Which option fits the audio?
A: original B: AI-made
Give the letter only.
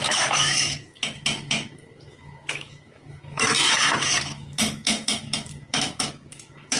B